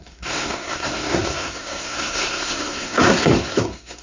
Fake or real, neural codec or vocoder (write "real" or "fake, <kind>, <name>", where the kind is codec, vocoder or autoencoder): fake, codec, SNAC